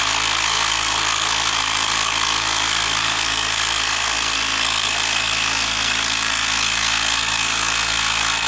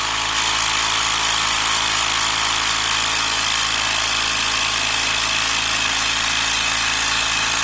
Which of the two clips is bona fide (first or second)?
second